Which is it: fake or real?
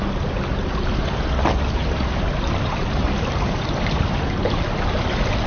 real